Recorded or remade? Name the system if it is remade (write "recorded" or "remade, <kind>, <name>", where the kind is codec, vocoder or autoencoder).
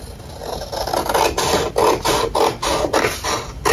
recorded